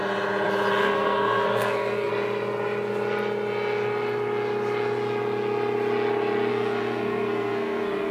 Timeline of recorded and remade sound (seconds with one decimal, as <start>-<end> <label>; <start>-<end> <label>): 0.0-0.8 recorded; 0.8-2.1 remade; 2.1-6.5 recorded; 6.5-8.1 remade

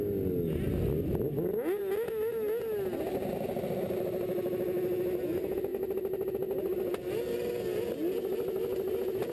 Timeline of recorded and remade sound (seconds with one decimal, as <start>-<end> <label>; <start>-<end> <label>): 0.0-9.3 recorded

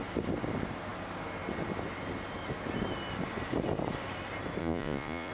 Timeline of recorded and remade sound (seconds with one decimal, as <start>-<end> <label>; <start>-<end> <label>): 0.0-4.6 recorded; 4.6-5.3 remade

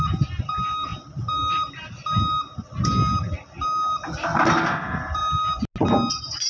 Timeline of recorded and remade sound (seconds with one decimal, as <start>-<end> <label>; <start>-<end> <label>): 0.0-6.5 recorded

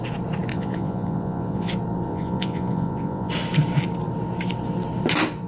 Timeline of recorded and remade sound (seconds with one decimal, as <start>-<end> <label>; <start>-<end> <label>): 0.0-0.5 recorded; 0.5-1.7 remade; 1.7-2.1 recorded; 2.1-3.3 remade; 3.3-5.5 recorded

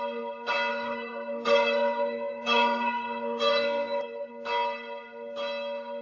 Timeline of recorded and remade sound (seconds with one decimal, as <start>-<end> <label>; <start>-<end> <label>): 0.0-0.7 recorded; 0.7-4.3 remade; 4.3-6.0 recorded

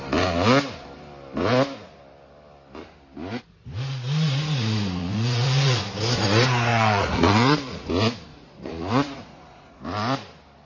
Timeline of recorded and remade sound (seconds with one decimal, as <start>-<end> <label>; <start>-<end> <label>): 0.0-5.0 recorded; 5.0-5.8 remade; 5.8-6.7 recorded; 6.7-7.9 remade; 7.9-8.3 recorded; 8.3-9.8 remade; 9.8-10.7 recorded